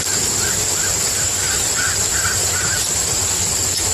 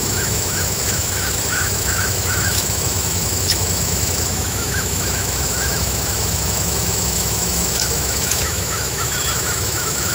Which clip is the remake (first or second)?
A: second